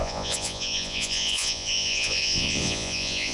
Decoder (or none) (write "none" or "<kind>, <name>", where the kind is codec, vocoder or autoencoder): vocoder, Vocos